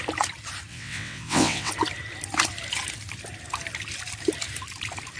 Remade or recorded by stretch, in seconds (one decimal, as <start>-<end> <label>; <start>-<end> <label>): 0.0-0.7 recorded; 0.7-1.7 remade; 1.7-5.2 recorded